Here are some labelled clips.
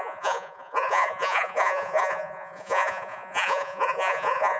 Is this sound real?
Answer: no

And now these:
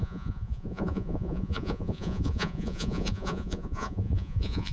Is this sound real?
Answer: no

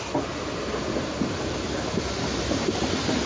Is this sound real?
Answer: yes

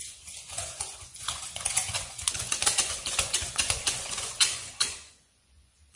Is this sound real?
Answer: no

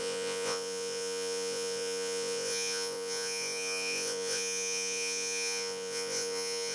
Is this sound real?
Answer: no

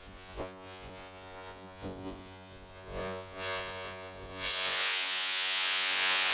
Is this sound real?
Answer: no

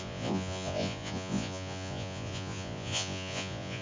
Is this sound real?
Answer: no